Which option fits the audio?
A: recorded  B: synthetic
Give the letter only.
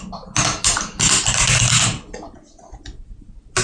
A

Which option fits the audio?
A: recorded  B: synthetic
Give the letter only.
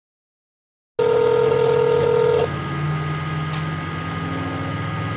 A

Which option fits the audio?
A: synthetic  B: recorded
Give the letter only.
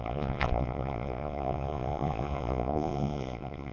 A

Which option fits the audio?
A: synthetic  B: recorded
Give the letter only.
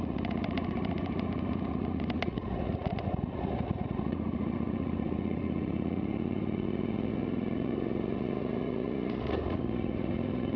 A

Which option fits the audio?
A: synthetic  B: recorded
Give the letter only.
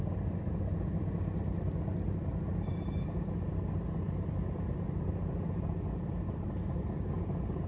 B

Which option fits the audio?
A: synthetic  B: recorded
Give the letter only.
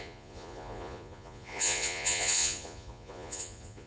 A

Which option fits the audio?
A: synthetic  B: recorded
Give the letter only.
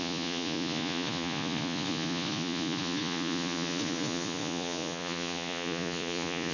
A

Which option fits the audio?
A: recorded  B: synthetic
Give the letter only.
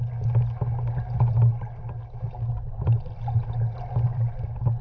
A